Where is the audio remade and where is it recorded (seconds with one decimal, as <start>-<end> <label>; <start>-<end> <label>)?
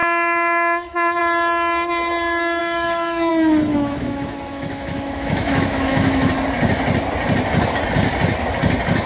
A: 0.0-1.2 remade; 1.2-2.6 recorded; 2.6-3.3 remade; 3.3-3.7 recorded; 3.7-6.3 remade; 6.3-9.1 recorded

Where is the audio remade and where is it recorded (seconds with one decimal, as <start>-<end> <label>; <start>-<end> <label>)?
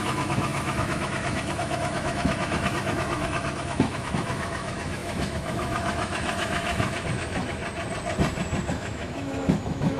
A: 0.0-7.6 remade; 7.6-8.7 recorded; 8.7-10.0 remade